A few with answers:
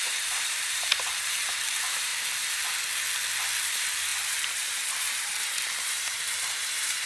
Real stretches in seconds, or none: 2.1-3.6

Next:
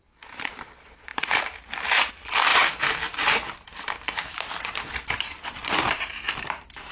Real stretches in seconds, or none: 0.0-1.1; 2.1-2.5; 4.6-5.6; 6.3-6.9

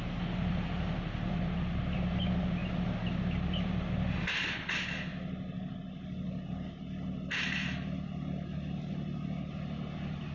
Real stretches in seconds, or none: 0.0-10.3

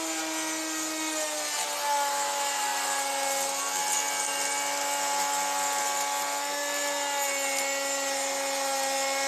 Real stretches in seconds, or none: 0.0-9.3

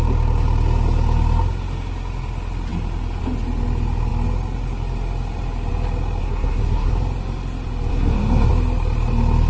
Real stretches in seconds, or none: 0.0-6.2; 6.9-7.9; 8.5-9.5

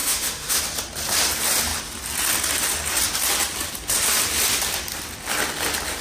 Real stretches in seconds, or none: 0.6-6.0

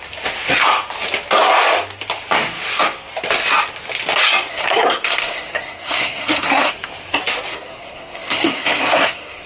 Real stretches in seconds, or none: 0.0-4.5; 6.7-7.5